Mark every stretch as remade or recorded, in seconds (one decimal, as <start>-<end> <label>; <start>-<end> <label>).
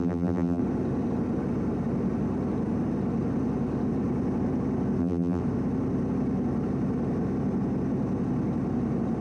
0.0-0.6 remade; 0.6-5.0 recorded; 5.0-5.4 remade; 5.4-9.2 recorded